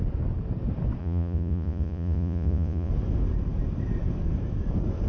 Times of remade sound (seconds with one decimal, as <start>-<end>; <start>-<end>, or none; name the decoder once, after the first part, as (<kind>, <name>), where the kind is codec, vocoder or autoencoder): 1.0-2.9 (vocoder, Vocos)